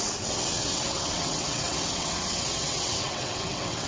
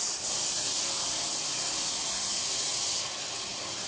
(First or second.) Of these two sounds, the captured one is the second